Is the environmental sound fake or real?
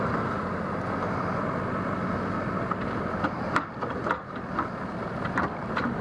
real